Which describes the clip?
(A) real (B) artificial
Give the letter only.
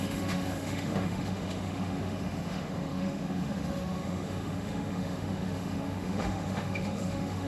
B